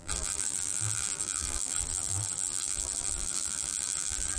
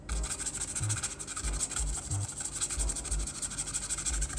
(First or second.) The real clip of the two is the second